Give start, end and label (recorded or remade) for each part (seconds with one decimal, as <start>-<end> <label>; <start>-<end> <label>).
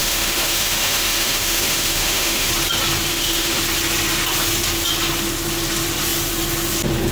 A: 0.0-2.5 remade; 2.5-3.1 recorded; 3.1-3.6 remade; 3.6-7.1 recorded